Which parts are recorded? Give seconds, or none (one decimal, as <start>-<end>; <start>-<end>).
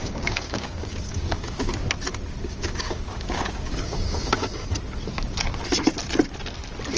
1.7-2.4; 4.6-7.0